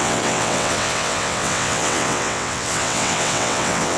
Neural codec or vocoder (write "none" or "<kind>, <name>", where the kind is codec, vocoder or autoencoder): vocoder, WaveNeXt